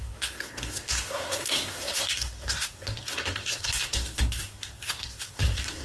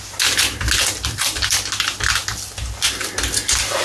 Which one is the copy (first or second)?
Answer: first